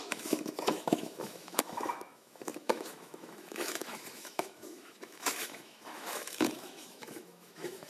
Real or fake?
fake